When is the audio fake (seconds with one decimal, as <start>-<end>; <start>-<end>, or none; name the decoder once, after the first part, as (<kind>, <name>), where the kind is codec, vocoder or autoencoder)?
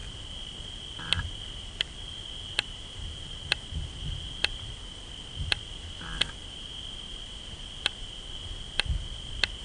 none